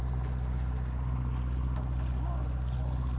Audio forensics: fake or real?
real